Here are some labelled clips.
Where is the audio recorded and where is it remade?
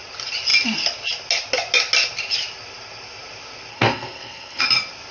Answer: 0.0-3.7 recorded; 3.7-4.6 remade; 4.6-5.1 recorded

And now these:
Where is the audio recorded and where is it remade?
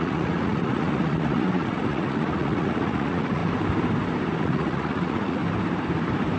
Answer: 0.0-3.4 remade; 3.4-4.4 recorded; 4.4-5.4 remade; 5.4-6.4 recorded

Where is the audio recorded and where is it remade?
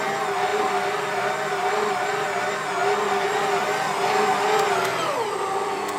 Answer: 0.0-0.5 recorded; 0.5-1.9 remade; 1.9-2.8 recorded; 2.8-4.5 remade; 4.5-4.9 recorded; 4.9-6.0 remade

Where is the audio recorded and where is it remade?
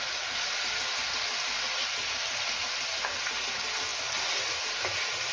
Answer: 0.0-5.3 recorded